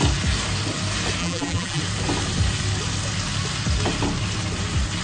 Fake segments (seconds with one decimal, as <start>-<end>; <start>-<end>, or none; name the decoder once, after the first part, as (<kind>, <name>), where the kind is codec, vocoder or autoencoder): 1.2-1.8 (vocoder, BigVGAN v2)